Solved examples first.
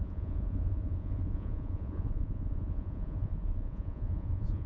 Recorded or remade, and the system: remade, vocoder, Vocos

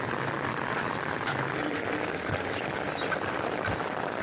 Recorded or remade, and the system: remade, vocoder, BigVGAN v2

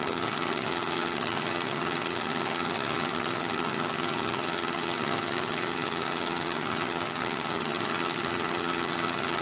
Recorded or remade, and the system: remade, vocoder, HiFi-GAN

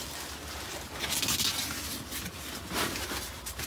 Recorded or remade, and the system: recorded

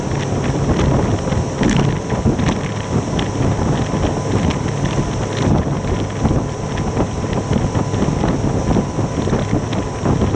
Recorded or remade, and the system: recorded